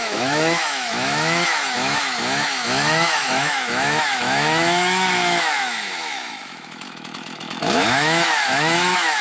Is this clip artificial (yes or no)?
yes